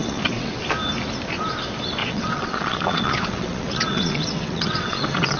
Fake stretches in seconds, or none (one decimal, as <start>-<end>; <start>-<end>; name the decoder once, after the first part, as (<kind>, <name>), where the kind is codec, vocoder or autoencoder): 0.0-0.6 (vocoder, WaveNeXt); 2.0-5.4